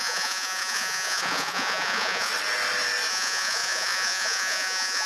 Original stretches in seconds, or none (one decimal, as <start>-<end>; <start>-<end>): 2.3-3.1